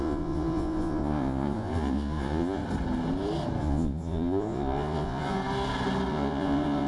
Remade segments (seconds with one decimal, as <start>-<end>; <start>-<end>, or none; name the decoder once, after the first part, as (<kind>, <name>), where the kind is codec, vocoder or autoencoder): 0.0-2.6 (vocoder, Vocos); 3.6-5.4; 6.1-6.9